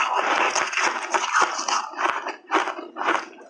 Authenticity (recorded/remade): recorded